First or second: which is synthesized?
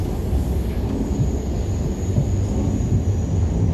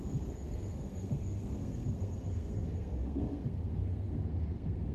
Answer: second